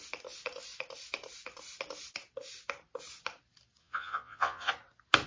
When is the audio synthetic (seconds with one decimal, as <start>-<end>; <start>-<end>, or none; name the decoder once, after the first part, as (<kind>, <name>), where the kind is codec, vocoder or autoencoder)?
3.8-4.7 (vocoder, Vocos)